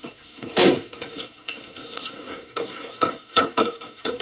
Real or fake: fake